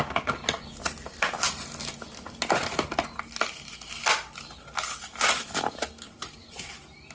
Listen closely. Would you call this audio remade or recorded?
recorded